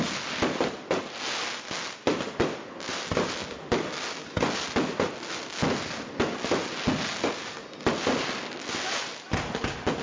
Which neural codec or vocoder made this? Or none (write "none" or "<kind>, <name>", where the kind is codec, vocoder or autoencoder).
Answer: none